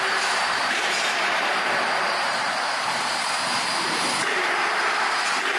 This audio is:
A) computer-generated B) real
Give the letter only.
A